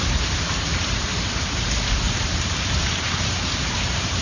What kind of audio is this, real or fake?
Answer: fake